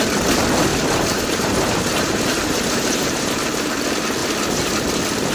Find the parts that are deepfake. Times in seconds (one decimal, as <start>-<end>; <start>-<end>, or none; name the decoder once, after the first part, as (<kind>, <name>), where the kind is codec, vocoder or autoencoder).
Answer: 0.7-3.7 (vocoder, BigVGAN v2)